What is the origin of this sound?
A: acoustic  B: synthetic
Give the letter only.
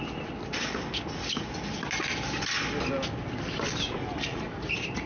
A